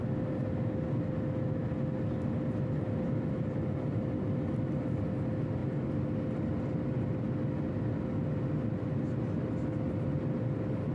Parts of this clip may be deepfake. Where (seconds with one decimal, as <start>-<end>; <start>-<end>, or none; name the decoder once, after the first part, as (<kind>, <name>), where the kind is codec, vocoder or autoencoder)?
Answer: none